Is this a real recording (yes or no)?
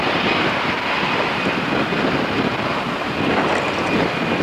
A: yes